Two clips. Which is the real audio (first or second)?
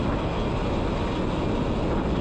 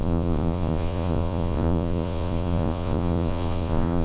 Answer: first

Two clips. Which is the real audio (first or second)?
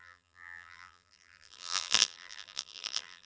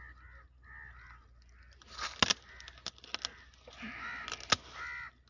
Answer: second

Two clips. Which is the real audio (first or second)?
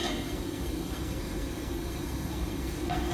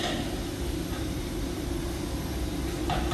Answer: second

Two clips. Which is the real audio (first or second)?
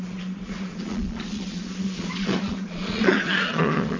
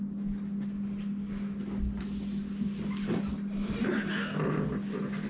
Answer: second